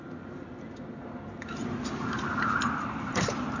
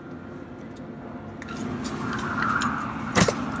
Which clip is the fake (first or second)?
first